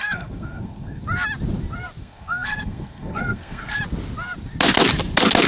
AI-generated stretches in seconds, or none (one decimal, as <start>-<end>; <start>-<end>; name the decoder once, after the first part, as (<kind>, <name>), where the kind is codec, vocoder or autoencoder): 0.0-1.0 (codec, SNAC); 2.0-3.8